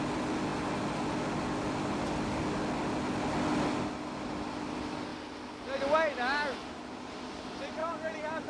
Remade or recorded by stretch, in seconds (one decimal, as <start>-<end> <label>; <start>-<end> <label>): 0.0-8.5 recorded